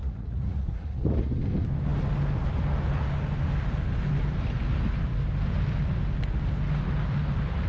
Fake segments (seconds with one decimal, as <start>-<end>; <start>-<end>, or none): 0.0-1.3